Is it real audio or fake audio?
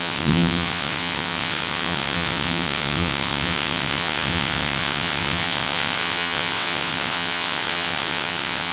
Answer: fake